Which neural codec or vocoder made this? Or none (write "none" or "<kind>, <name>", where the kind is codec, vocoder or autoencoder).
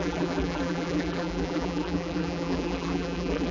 vocoder, BigVGAN v2